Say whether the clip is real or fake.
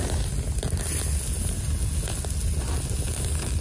real